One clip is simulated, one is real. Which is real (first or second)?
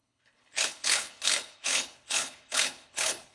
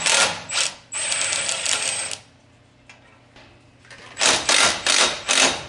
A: second